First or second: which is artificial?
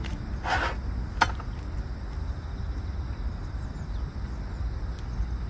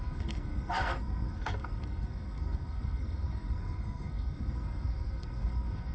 second